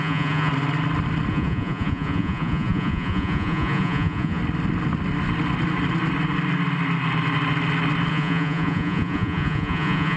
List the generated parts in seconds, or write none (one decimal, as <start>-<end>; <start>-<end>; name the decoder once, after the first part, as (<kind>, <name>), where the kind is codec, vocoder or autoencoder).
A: 0.0-0.5 (vocoder, Vocos); 1.3-4.4; 8.1-10.2